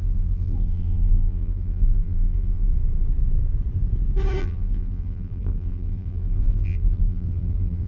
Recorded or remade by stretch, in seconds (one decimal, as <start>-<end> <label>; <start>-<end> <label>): 0.0-2.7 remade; 2.7-4.4 recorded; 4.4-7.9 remade